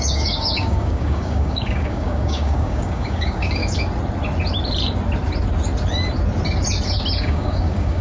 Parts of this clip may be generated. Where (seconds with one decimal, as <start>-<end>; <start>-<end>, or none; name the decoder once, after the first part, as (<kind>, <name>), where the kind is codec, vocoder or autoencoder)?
0.0-3.6 (codec, DAC); 7.2-8.0